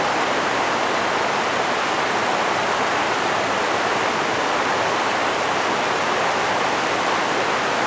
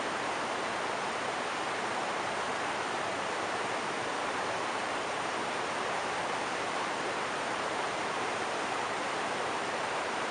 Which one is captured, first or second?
first